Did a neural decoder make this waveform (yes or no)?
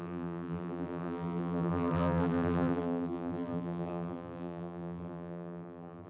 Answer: yes